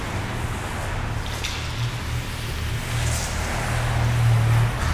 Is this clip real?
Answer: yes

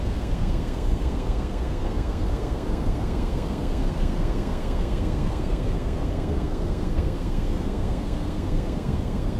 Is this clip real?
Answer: no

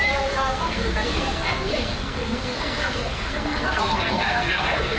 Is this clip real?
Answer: no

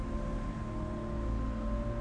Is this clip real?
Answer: yes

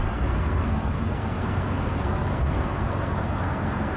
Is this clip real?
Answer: no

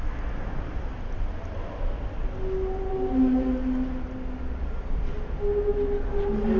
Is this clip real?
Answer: yes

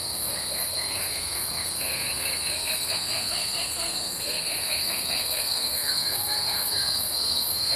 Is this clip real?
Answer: no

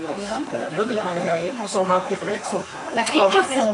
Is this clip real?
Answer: no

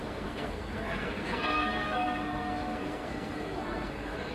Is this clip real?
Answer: no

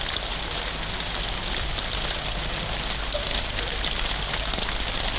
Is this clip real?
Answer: yes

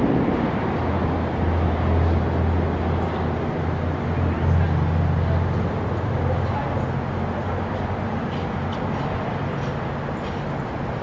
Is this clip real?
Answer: yes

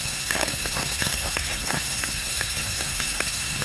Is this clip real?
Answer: no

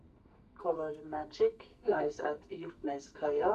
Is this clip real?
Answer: no